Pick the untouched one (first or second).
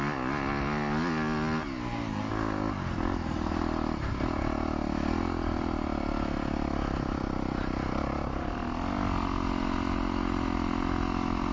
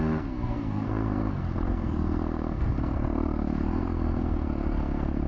first